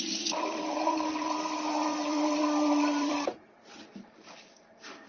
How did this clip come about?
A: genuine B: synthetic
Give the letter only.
B